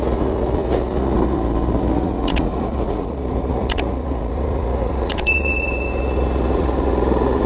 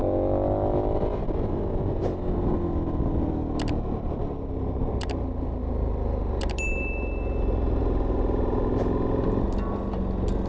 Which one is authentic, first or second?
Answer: second